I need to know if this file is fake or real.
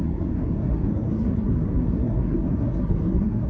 fake